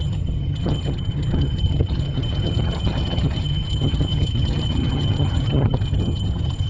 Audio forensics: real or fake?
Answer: fake